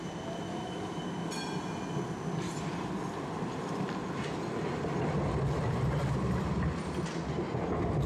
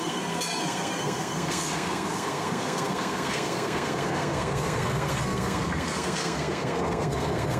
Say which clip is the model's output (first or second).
second